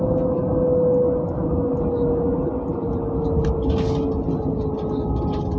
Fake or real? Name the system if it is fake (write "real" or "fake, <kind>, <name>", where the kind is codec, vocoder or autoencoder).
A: real